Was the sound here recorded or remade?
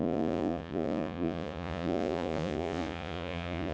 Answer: remade